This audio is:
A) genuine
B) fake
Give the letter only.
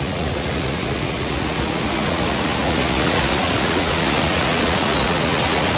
B